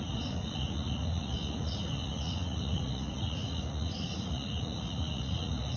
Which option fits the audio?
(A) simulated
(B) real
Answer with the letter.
A